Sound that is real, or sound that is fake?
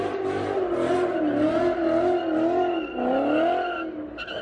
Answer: real